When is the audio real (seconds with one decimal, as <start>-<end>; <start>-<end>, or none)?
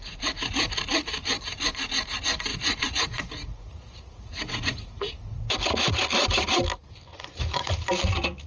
0.0-2.5; 5.1-7.1; 7.6-8.5